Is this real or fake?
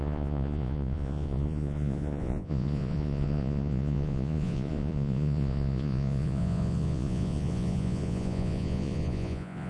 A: fake